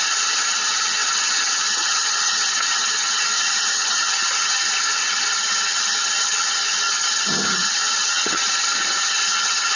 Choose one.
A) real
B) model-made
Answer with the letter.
B